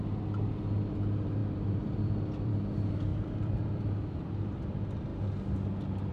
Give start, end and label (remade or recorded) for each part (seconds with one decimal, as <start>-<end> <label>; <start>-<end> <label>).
0.0-1.4 recorded; 1.4-2.5 remade; 2.5-3.1 recorded; 3.1-3.8 remade; 3.8-6.1 recorded